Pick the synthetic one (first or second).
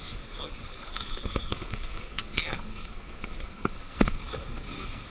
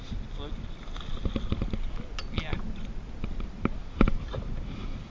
first